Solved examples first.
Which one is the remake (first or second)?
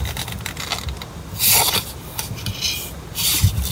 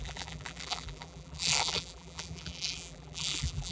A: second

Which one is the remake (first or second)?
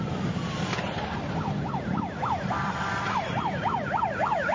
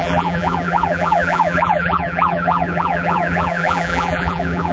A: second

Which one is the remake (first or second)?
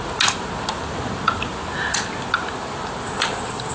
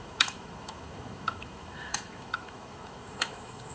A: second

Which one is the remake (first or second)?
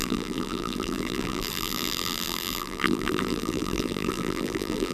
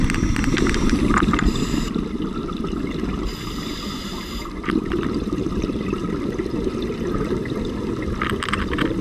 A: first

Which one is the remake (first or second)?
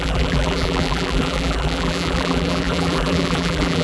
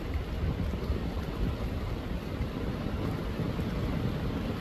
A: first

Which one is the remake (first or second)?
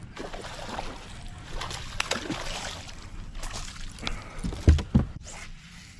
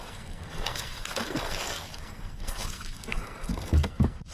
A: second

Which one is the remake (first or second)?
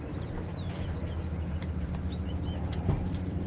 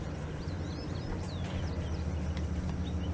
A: first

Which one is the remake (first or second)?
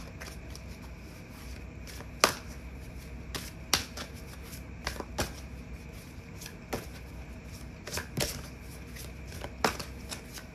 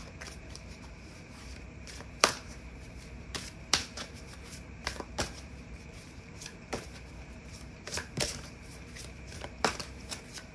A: second